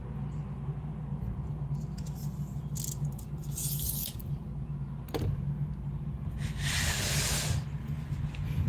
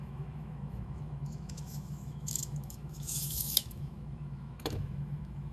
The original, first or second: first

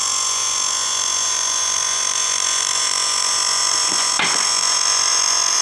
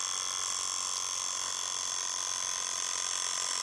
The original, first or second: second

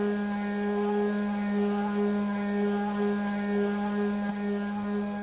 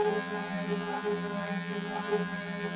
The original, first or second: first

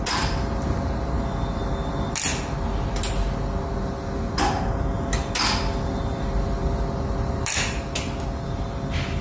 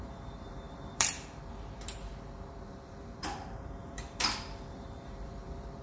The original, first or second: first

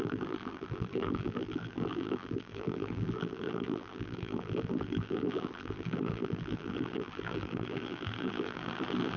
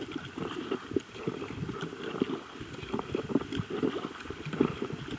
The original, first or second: second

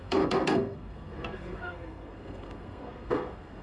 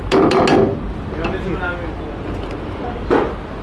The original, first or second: second